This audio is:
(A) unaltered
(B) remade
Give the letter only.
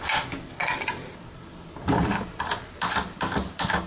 A